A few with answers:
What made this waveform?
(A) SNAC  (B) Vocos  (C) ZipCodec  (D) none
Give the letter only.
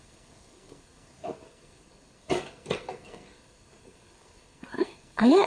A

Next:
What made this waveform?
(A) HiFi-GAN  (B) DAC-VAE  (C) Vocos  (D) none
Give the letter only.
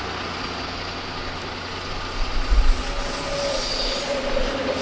D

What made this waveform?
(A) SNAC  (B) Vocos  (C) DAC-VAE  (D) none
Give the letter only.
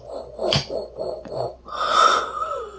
B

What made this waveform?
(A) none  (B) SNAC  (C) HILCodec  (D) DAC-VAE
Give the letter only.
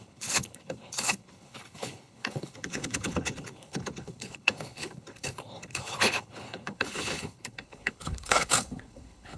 C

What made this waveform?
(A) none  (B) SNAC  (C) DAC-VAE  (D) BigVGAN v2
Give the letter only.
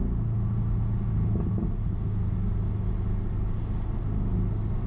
A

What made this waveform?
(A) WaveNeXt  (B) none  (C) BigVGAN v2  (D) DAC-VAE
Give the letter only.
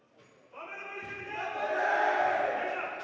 B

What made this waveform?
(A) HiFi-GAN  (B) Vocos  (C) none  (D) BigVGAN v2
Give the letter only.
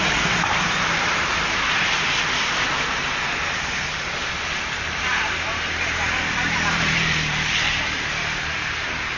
D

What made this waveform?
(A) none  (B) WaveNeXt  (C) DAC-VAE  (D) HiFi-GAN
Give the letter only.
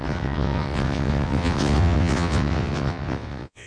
B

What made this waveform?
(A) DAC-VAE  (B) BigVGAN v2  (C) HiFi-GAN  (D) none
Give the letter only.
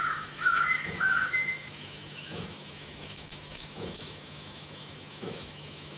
A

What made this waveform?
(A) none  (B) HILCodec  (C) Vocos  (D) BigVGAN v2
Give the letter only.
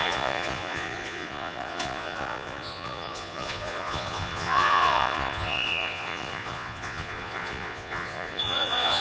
C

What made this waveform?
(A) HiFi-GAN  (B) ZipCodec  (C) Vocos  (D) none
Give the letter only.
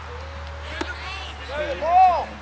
D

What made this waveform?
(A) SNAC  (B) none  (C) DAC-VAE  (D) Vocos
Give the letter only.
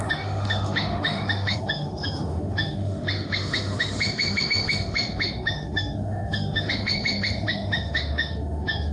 C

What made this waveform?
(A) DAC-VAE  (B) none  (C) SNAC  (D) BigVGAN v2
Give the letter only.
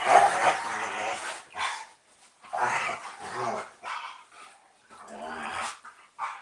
B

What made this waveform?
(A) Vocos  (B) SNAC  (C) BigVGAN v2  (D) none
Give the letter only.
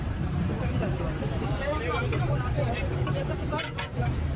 C